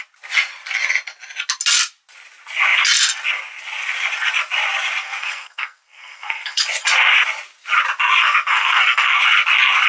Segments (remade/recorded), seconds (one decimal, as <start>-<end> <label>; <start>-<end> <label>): 0.0-5.0 recorded; 5.0-6.6 remade; 6.6-8.2 recorded; 8.2-9.2 remade; 9.2-9.9 recorded